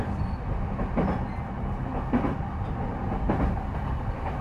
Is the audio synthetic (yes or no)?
no